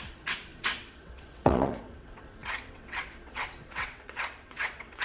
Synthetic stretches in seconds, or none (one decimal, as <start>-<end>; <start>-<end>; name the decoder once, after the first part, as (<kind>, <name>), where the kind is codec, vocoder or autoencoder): 0.0-5.0 (vocoder, WaveNeXt)